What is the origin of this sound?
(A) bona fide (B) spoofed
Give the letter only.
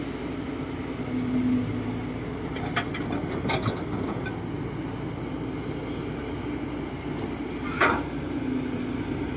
A